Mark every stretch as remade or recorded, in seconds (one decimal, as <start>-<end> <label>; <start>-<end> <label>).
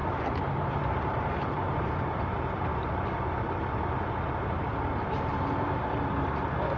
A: 0.0-2.7 remade; 2.7-4.5 recorded; 4.5-6.8 remade